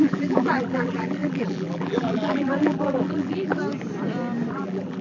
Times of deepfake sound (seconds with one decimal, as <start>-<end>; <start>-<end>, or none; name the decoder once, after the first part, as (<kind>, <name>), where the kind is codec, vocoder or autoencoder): 0.0-3.6 (vocoder, BigVGAN v2); 4.5-5.0